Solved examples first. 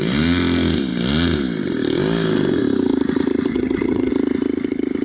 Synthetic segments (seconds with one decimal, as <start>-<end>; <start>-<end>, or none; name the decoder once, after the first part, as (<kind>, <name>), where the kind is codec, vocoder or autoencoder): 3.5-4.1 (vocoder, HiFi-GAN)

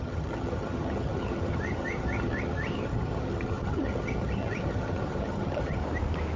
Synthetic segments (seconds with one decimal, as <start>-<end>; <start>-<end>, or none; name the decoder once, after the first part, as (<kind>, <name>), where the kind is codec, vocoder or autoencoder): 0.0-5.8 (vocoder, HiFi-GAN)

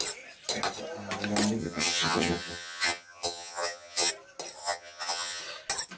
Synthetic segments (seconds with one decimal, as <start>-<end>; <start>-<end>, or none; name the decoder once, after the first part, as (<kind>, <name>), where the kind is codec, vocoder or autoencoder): 1.6-4.1 (vocoder, HiFi-GAN); 4.6-5.4

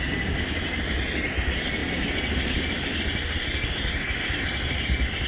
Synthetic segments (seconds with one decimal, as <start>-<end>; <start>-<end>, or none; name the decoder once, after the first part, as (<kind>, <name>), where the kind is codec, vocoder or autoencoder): none

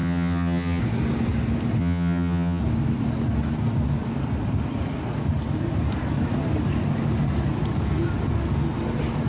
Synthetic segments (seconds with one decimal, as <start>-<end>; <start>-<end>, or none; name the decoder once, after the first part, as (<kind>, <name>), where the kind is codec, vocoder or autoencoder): 0.0-0.8 (vocoder, HiFi-GAN); 1.8-2.6

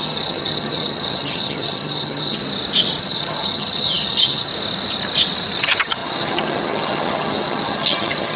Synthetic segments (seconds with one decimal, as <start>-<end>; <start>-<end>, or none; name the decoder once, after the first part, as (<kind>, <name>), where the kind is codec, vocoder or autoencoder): 0.0-2.4 (vocoder, HiFi-GAN); 3.0-4.5; 5.6-8.4